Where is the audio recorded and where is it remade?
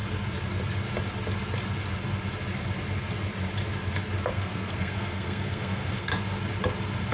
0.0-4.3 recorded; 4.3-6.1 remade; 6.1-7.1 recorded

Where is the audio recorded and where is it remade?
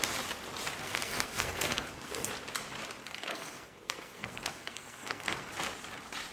0.0-0.8 recorded; 0.8-2.3 remade; 2.3-3.0 recorded; 3.0-5.5 remade; 5.5-6.3 recorded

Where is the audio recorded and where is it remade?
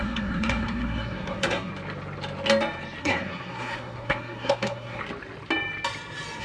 0.0-1.7 remade; 1.7-3.0 recorded; 3.0-5.0 remade; 5.0-6.4 recorded